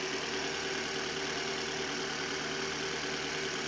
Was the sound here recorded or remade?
recorded